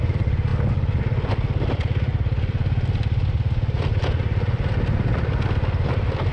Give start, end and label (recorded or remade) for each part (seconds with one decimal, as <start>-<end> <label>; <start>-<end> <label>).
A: 0.0-6.3 recorded